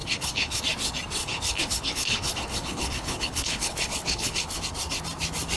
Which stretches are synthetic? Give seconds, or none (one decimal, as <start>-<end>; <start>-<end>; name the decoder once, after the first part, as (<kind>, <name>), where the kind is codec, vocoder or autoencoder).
0.0-0.6 (codec, HILCodec); 1.2-4.6